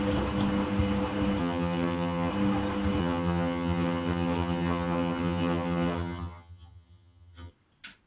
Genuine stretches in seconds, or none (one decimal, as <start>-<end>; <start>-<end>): 0.0-1.4; 2.3-3.0; 7.5-8.1